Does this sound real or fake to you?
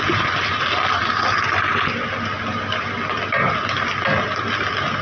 real